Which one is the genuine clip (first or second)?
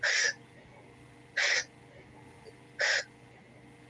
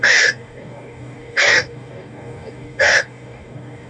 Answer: first